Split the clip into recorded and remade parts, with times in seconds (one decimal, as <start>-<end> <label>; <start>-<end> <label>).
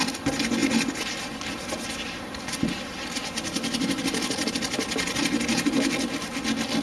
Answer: 0.0-6.8 recorded